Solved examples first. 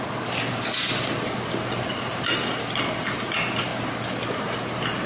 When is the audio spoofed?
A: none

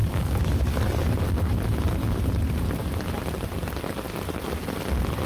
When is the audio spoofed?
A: 0.0-0.8 (codec, DAC)

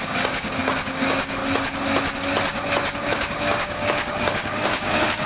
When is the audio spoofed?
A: 0.0-1.4 (codec, DAC); 3.1-5.3